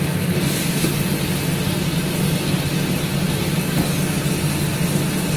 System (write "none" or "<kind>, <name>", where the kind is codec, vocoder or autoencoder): none